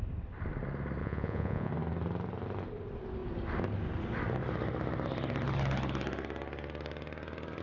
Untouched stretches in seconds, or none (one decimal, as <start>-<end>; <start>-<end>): 0.0-1.0; 1.7-7.6